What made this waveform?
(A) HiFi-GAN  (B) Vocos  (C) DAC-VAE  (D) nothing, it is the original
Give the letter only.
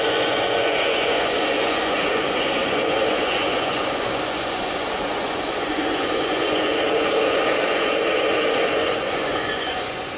B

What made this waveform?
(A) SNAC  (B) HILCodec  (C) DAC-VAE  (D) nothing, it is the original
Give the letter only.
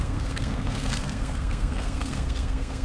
A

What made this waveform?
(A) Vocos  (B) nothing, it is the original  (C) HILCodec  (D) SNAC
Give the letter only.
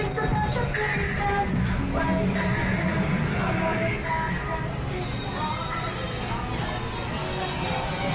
B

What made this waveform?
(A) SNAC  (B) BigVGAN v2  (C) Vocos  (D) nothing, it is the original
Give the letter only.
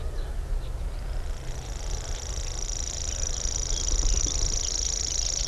D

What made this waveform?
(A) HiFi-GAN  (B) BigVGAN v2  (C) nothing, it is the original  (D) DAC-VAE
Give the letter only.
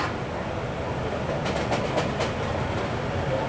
C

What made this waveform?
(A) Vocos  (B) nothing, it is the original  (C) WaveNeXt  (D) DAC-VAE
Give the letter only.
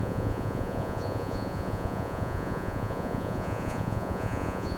A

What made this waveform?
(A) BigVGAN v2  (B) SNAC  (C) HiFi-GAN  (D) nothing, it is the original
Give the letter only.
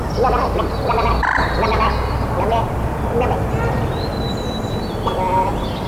D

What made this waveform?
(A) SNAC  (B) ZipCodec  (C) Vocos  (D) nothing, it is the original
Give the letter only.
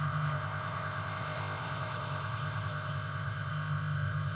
B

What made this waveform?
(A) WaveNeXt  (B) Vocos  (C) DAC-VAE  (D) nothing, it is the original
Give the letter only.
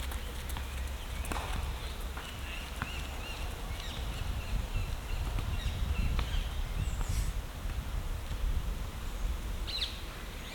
D